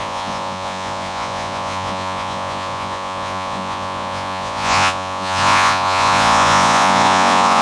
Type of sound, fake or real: fake